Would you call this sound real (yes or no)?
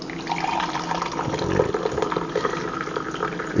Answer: yes